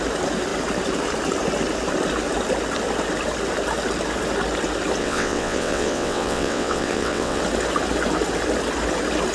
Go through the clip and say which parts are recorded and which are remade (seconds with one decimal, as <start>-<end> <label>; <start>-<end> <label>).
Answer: 0.0-5.0 recorded; 5.0-7.4 remade; 7.4-9.3 recorded